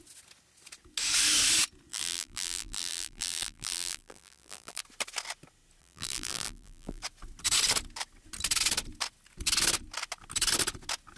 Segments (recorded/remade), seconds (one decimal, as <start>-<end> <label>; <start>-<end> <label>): 0.0-1.9 recorded; 1.9-4.8 remade; 4.8-5.8 recorded; 5.8-7.0 remade; 7.0-11.2 recorded